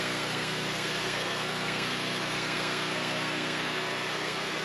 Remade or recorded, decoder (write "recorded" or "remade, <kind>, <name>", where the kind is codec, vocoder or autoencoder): remade, codec, SNAC